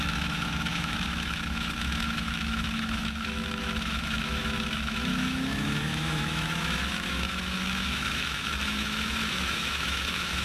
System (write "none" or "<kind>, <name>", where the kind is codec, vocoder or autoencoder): autoencoder, DAC-VAE